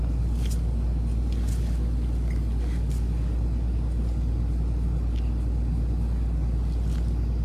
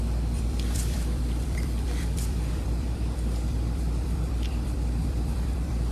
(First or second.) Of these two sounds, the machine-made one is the second